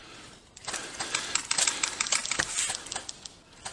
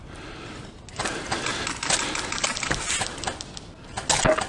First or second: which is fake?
first